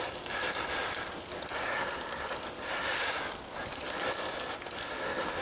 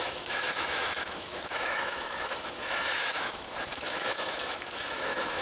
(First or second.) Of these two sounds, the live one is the first